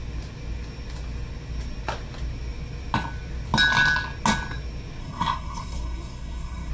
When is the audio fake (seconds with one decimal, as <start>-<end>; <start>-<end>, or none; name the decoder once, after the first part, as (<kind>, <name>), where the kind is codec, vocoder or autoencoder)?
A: 5.0-6.7 (codec, SNAC)